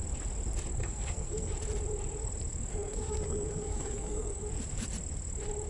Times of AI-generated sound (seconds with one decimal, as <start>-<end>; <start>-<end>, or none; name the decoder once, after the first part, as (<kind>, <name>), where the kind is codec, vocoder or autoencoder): 0.8-1.5 (codec, SNAC); 2.7-4.4